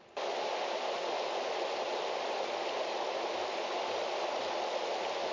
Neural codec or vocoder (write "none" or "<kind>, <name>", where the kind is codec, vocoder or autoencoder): none